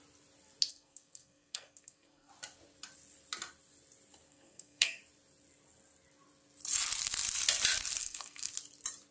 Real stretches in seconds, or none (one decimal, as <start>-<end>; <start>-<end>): 0.0-0.7; 2.3-4.3; 5.0-8.0; 8.5-9.1